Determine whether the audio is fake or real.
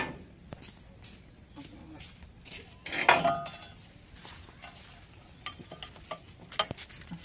real